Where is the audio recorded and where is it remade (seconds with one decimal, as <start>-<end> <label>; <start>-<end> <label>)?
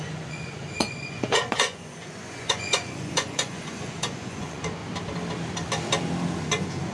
0.0-4.8 remade; 4.8-6.5 recorded; 6.5-6.9 remade